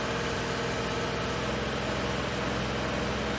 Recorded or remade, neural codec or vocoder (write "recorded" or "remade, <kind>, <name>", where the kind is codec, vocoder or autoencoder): recorded